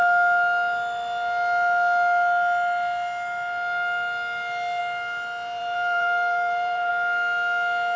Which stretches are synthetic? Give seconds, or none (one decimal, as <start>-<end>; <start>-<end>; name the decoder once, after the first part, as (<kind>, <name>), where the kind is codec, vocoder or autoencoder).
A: 5.6-6.9 (vocoder, BigVGAN v2)